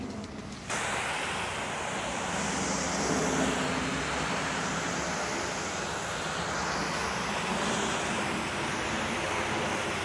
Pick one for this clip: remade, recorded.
recorded